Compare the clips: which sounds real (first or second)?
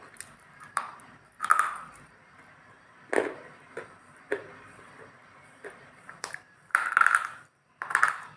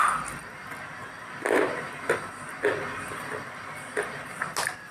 second